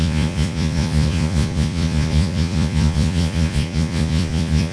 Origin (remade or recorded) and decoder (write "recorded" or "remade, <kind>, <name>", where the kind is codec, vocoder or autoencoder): remade, vocoder, Vocos